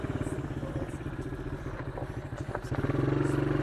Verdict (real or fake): real